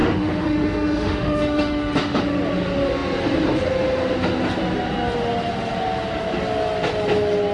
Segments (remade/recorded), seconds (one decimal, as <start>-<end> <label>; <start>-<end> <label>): 0.0-2.2 remade; 2.2-7.5 recorded